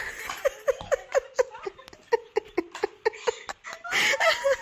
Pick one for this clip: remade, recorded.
recorded